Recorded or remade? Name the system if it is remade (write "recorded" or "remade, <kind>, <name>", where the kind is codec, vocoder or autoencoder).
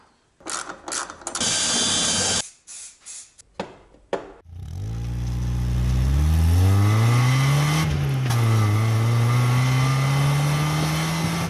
recorded